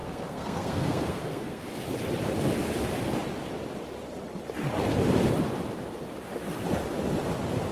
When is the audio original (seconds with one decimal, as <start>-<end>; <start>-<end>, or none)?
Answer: 1.6-7.7